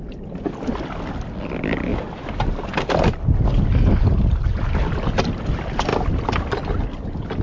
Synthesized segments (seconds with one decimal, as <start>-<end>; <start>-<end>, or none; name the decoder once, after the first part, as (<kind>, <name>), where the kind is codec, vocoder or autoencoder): none